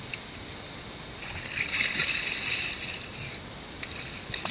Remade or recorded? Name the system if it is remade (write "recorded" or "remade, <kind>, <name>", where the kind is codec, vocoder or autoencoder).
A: recorded